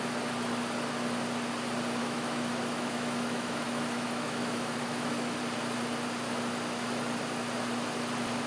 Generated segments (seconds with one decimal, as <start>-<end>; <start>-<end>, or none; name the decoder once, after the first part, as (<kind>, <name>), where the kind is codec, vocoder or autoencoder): 2.0-5.4 (autoencoder, DAC-VAE)